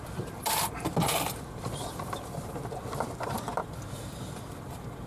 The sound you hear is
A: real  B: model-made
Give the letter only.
B